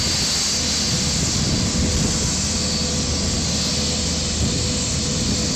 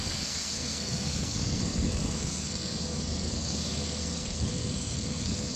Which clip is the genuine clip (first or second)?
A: first